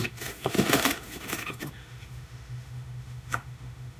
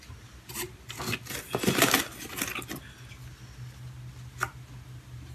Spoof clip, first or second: first